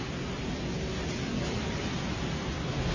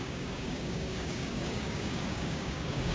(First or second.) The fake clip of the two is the second